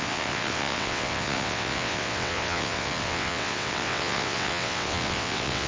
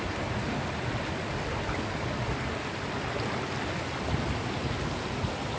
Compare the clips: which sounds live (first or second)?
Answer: second